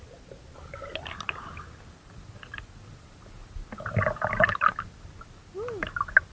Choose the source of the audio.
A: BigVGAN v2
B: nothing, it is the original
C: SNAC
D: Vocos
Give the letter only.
B